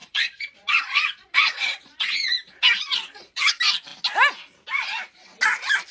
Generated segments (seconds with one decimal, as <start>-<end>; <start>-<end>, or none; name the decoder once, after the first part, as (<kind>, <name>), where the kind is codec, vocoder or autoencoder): 0.0-3.5 (vocoder, Vocos)